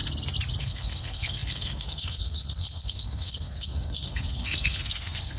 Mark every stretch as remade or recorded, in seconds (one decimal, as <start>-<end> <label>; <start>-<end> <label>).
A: 0.0-0.6 recorded; 0.6-5.4 remade